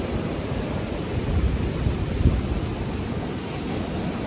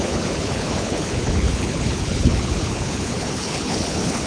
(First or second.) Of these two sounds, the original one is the first